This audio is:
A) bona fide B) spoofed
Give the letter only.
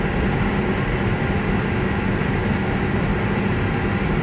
A